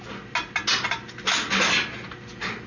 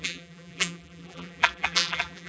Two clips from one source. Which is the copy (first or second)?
second